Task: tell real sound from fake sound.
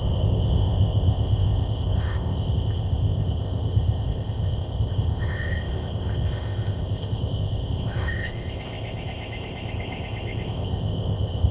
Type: fake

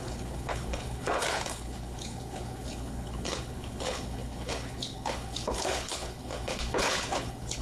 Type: fake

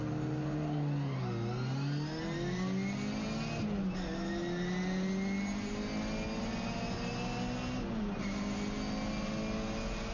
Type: real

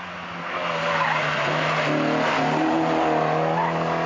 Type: real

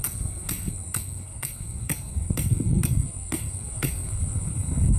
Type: fake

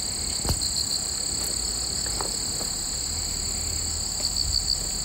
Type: real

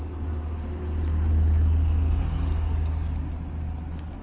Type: real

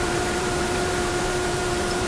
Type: fake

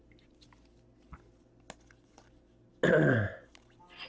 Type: real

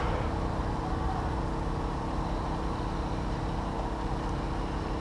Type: real